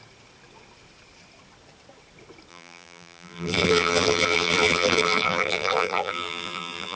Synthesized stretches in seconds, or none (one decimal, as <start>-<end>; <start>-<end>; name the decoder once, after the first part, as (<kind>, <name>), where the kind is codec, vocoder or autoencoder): 2.5-7.0 (vocoder, BigVGAN v2)